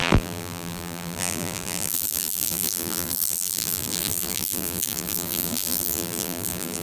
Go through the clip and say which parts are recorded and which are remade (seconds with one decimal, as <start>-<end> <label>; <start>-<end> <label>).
0.0-6.8 remade